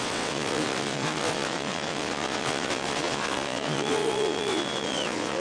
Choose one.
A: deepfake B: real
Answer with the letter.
A